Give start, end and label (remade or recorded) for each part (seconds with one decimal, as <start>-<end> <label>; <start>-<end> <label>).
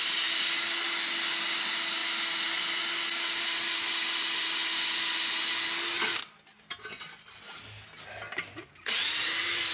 0.0-8.5 recorded; 8.5-9.1 remade; 9.1-9.7 recorded